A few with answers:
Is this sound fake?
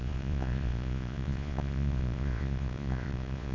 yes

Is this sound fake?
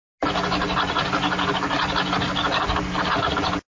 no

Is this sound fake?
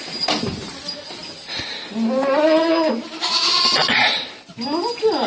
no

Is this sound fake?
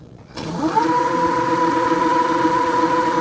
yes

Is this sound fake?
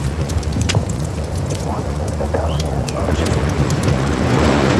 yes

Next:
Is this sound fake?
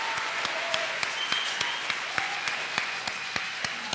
yes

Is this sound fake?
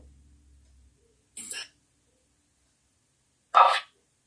no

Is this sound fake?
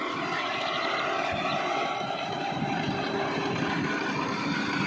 no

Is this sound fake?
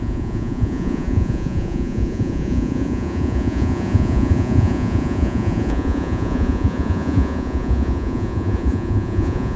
yes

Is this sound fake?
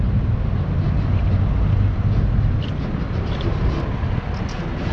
no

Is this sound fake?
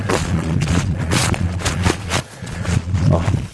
yes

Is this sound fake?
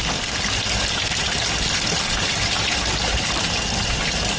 no